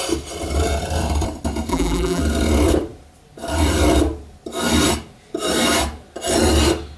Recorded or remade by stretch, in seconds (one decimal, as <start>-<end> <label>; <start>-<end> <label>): 0.0-1.7 recorded; 1.7-2.2 remade; 2.2-7.0 recorded